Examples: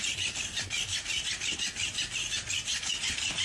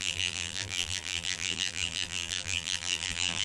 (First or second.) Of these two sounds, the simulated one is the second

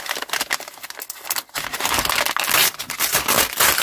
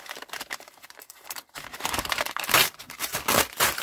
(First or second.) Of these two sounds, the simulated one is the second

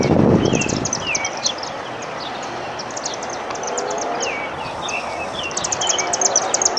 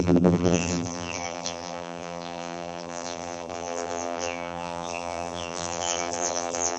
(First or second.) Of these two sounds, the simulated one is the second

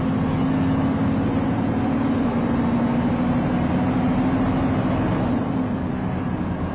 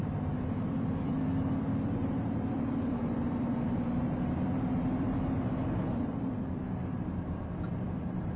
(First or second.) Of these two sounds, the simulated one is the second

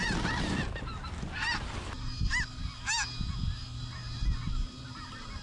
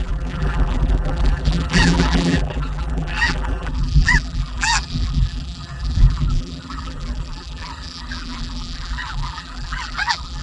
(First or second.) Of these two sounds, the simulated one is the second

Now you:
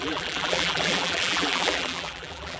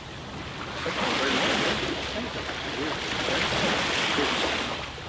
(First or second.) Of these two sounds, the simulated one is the first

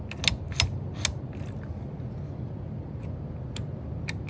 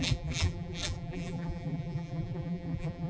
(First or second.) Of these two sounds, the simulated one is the second